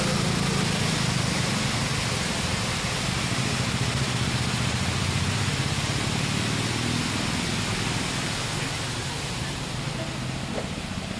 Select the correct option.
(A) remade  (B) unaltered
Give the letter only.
B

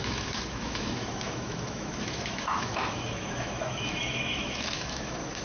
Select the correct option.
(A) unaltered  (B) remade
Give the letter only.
B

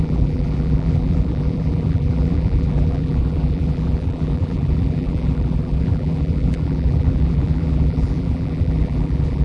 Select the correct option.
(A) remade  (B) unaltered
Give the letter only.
A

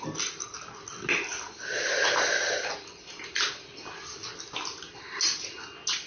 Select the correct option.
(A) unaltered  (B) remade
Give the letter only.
A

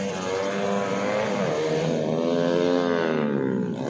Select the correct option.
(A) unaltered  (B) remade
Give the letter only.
A